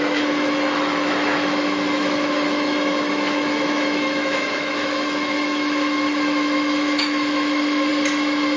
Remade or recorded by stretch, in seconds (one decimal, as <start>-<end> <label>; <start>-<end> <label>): 0.0-7.9 remade; 7.9-8.6 recorded